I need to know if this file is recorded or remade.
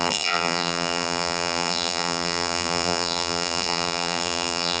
remade